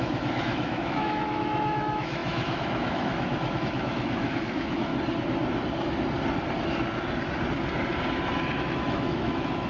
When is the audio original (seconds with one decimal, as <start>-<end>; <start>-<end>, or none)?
4.9-8.6

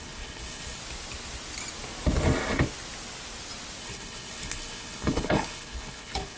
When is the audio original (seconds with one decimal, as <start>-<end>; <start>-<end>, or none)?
0.8-3.8

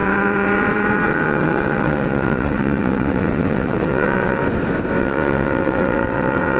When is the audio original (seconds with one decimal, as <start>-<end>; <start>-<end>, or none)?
4.4-5.0